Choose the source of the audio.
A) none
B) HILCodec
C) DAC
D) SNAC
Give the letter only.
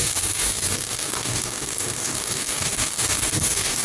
C